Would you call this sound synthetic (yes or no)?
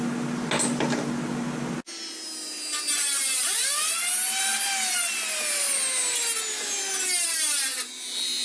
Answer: no